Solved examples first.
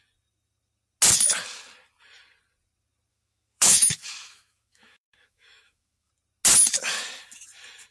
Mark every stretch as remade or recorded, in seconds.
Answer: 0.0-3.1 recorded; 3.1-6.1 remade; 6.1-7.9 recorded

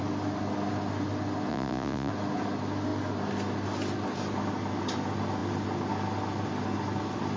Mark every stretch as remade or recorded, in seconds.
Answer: 0.0-1.5 recorded; 1.5-2.1 remade; 2.1-7.4 recorded

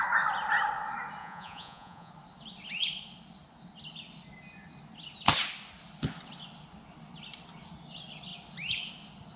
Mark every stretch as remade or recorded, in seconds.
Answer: 0.0-1.2 recorded; 1.2-2.1 remade; 2.1-9.4 recorded

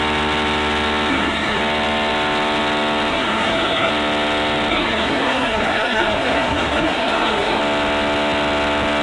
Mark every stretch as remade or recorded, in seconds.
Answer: 0.0-1.1 recorded; 1.1-1.6 remade; 1.6-3.1 recorded; 3.1-3.9 remade; 3.9-4.7 recorded; 4.7-7.6 remade; 7.6-9.0 recorded

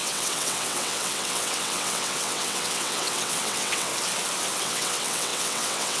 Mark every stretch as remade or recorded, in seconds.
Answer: 0.0-3.9 remade; 3.9-4.6 recorded; 4.6-6.0 remade

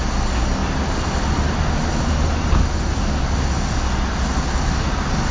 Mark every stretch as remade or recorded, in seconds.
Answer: 0.0-5.3 recorded

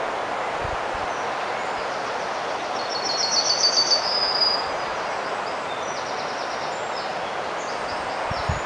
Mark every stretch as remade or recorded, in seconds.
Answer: 0.0-7.1 recorded; 7.1-8.1 remade; 8.1-8.7 recorded

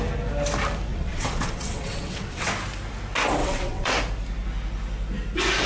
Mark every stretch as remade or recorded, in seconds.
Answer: 0.0-0.9 recorded; 0.9-2.5 remade; 2.5-3.4 recorded; 3.4-3.9 remade; 3.9-5.7 recorded